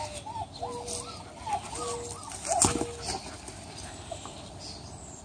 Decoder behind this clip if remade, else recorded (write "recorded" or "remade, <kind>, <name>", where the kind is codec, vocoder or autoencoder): recorded